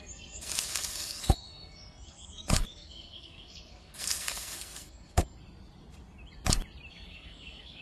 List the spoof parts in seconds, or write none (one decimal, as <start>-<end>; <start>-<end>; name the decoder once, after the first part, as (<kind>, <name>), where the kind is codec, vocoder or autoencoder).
0.0-5.2 (codec, SNAC); 6.9-7.8